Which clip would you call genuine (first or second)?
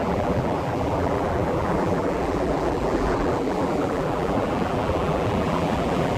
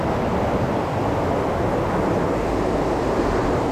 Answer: second